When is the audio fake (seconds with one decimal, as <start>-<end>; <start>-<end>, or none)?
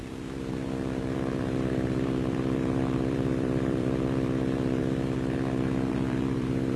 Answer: 0.0-4.8; 5.9-6.8